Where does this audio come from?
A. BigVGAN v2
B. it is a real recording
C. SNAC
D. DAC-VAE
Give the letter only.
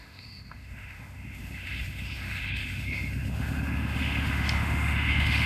D